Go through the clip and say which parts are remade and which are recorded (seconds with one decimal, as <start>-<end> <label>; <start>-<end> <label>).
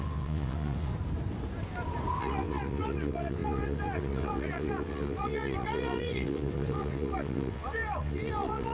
0.0-0.9 remade; 0.9-2.2 recorded; 2.2-8.7 remade